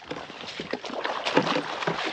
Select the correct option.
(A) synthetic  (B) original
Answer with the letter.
B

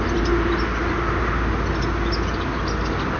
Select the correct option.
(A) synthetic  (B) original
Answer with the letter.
B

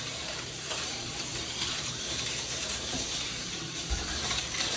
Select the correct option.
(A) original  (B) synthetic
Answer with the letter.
B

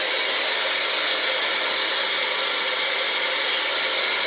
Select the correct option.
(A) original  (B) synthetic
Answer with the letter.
A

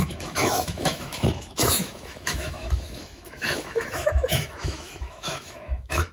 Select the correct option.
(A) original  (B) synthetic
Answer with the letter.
B